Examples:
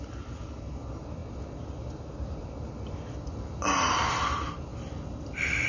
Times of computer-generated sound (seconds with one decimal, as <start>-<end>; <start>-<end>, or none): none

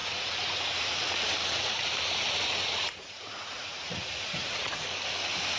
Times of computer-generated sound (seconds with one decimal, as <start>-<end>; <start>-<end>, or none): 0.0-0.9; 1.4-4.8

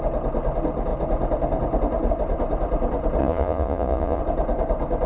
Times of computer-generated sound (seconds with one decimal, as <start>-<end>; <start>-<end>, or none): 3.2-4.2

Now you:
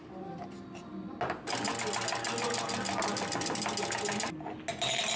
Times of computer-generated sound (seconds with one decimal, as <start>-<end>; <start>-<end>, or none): none

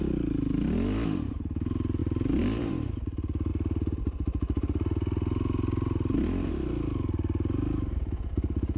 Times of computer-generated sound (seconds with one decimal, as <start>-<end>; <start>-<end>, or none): none

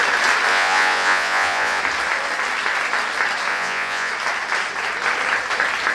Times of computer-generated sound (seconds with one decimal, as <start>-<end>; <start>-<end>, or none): 0.5-1.8; 3.5-4.1